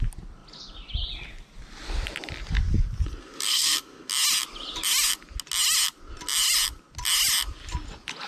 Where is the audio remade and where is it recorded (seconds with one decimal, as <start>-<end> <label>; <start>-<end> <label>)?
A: 0.0-3.2 recorded; 3.2-4.1 remade; 4.1-8.3 recorded